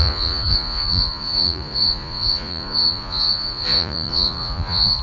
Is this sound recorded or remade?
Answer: remade